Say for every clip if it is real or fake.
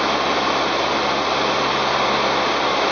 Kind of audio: real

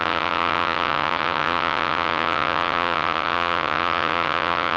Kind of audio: fake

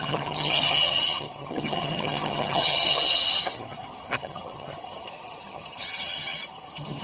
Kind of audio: fake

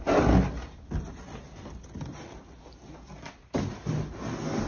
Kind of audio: real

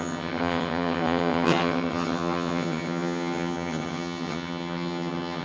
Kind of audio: fake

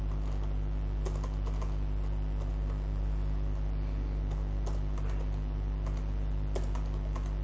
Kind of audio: real